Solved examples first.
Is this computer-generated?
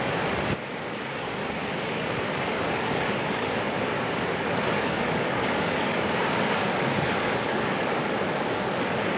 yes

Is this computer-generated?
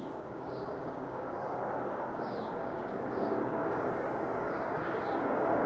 yes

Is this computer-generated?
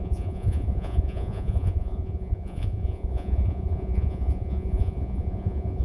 yes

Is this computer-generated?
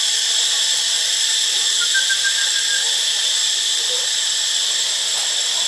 no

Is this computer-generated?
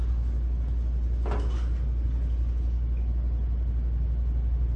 no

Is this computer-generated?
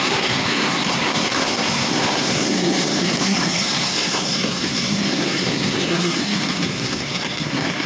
yes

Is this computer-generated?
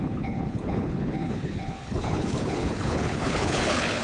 yes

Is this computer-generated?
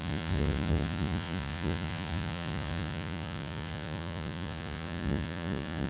yes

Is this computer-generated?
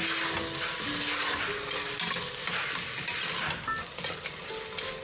no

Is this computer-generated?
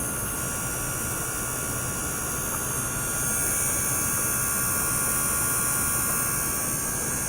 no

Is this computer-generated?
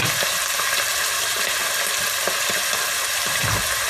no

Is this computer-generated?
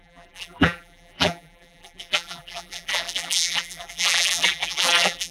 yes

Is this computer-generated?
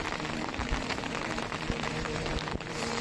yes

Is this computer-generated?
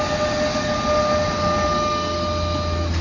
no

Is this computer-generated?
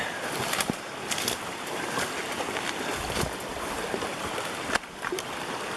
no